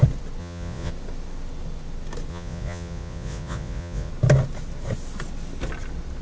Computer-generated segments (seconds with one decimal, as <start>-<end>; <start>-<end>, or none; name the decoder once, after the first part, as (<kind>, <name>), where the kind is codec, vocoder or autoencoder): 0.4-0.9 (vocoder, Vocos); 2.3-4.1